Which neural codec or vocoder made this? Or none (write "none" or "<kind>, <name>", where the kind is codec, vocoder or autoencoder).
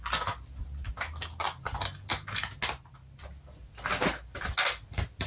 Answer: none